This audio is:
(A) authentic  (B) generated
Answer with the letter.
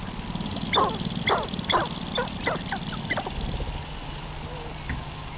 A